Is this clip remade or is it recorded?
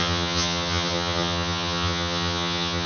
remade